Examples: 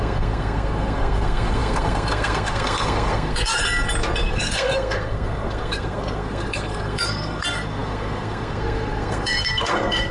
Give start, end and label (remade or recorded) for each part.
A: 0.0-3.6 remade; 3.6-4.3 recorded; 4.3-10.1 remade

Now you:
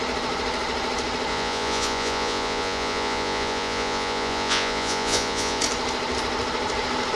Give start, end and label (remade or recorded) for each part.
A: 0.0-1.3 recorded; 1.3-5.6 remade; 5.6-7.2 recorded

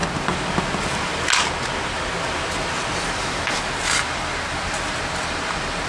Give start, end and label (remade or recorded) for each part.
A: 0.0-5.9 recorded

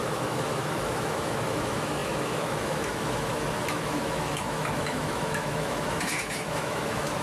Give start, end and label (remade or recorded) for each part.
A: 0.0-7.2 remade

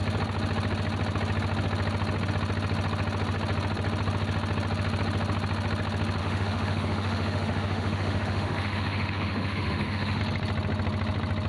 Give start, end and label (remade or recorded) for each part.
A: 0.0-6.2 recorded; 6.2-10.2 remade; 10.2-11.5 recorded

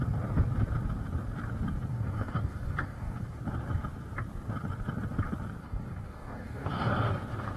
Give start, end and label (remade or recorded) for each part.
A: 0.0-1.9 recorded; 1.9-3.4 remade; 3.4-5.6 recorded; 5.6-6.7 remade; 6.7-7.6 recorded

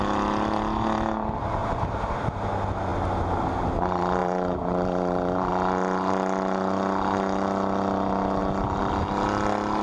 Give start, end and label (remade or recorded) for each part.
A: 0.0-1.6 recorded; 1.6-2.5 remade; 2.5-4.2 recorded; 4.2-5.5 remade; 5.5-8.4 recorded; 8.4-8.9 remade; 8.9-9.8 recorded

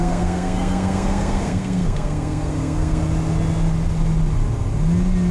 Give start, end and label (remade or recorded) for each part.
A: 0.0-3.0 remade; 3.0-5.3 recorded